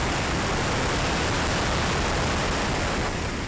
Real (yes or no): yes